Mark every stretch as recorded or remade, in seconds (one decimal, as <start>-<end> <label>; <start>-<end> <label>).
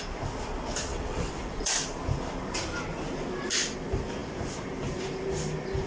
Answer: 0.0-0.9 recorded; 0.9-1.7 remade; 1.7-5.9 recorded